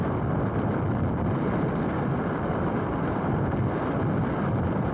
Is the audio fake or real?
real